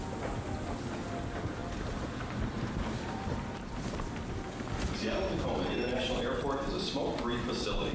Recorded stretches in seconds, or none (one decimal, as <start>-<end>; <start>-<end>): 0.0-1.6; 4.1-7.9